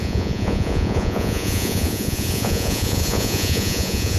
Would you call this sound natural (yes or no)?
no